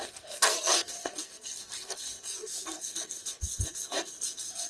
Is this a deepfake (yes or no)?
yes